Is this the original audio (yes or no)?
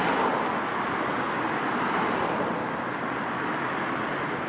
yes